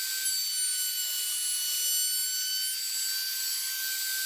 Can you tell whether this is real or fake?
real